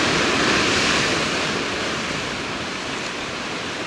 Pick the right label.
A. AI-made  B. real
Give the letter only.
B